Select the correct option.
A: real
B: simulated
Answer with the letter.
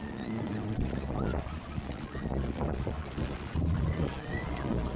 B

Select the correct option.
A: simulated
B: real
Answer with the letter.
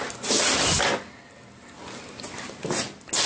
B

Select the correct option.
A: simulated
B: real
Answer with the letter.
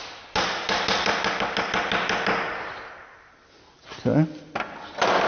B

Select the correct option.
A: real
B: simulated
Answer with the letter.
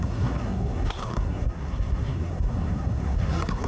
B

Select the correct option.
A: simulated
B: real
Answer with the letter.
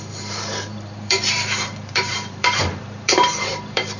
A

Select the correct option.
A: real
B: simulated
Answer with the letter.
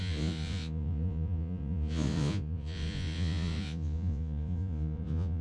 B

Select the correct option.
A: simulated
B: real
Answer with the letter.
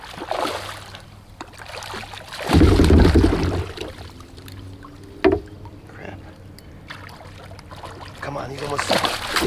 B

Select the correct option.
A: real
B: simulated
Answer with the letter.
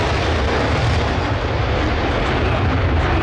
A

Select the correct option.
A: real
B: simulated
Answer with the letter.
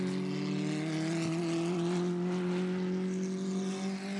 A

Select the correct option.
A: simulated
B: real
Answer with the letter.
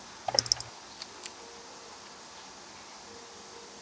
B